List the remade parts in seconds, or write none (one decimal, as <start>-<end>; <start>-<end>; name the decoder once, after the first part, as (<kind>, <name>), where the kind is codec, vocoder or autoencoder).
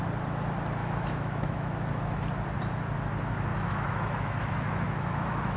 0.8-2.2 (autoencoder, DAC-VAE); 3.5-5.6